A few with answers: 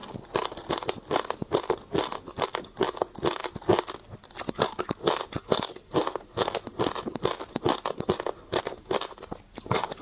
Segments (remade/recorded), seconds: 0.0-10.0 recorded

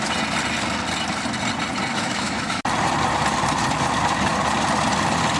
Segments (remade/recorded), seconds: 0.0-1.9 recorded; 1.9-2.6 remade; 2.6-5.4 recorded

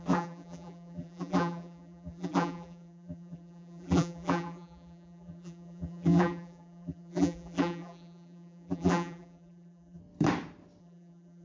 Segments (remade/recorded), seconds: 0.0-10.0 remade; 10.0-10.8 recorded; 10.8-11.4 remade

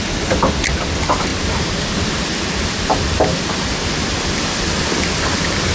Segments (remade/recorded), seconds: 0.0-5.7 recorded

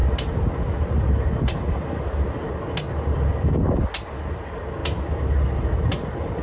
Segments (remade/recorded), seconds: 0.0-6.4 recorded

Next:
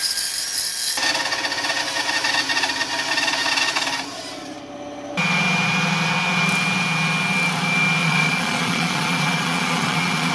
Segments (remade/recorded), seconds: 0.0-8.0 recorded; 8.0-10.3 remade